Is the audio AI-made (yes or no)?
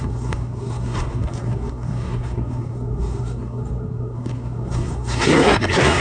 yes